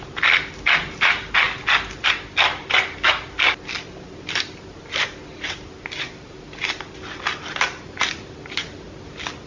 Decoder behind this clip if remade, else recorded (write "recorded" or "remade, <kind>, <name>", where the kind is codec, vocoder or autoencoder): recorded